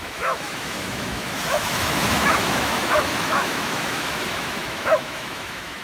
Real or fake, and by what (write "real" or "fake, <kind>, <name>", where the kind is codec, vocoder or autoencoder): fake, autoencoder, DAC-VAE